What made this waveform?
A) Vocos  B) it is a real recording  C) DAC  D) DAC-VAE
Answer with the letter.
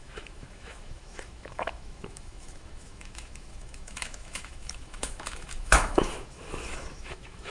D